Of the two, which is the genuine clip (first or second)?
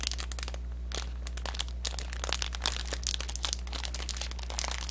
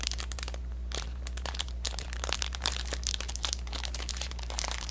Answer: first